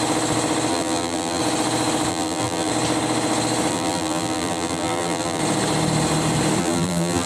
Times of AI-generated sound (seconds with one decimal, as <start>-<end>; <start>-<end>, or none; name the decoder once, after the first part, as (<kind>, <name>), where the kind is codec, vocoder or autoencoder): 0.7-1.4 (vocoder, BigVGAN v2); 2.1-2.7; 3.7-5.4; 6.6-7.3